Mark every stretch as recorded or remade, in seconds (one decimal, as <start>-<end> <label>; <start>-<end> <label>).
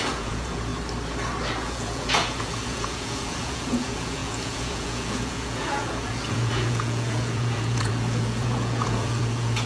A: 0.0-0.7 remade; 0.7-1.5 recorded; 1.5-9.7 remade